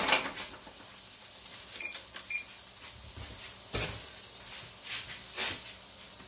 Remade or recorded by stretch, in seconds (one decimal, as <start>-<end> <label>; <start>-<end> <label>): 0.0-6.3 recorded